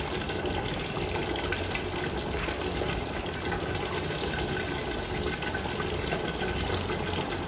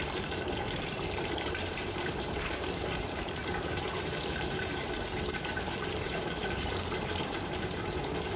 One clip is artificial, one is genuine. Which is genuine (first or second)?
first